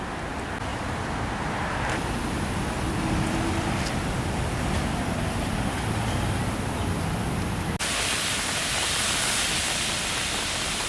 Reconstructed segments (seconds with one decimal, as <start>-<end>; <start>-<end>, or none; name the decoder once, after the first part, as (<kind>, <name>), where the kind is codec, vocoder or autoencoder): none